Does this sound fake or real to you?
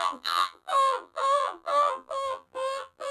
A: fake